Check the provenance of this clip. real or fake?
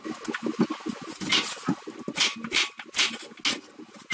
real